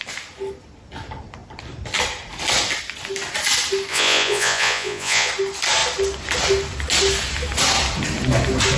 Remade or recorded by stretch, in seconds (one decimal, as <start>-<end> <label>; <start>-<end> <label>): 0.0-3.9 recorded; 3.9-5.3 remade; 5.3-8.8 recorded